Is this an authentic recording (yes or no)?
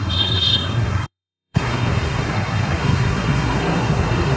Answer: no